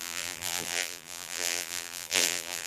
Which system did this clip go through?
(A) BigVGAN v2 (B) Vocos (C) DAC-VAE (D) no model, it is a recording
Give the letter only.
A